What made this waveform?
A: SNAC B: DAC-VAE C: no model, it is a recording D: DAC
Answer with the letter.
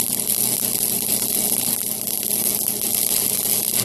C